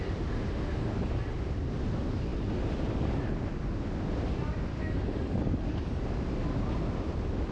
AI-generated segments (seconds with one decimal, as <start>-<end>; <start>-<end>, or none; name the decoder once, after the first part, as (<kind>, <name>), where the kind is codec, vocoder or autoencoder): 0.7-1.2 (codec, DAC); 4.7-6.0